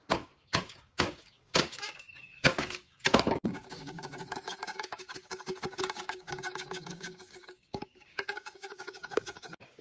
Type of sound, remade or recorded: remade